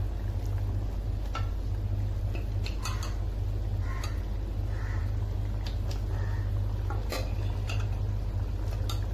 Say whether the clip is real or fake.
real